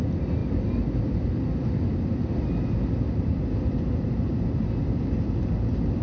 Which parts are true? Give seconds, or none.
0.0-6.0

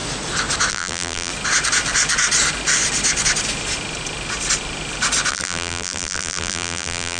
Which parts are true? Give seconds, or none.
0.0-0.7; 1.3-5.3

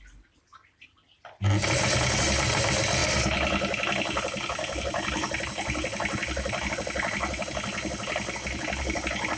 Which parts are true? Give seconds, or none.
0.0-9.4